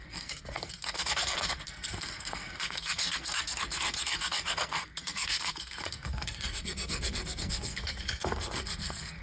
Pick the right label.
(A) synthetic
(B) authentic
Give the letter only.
A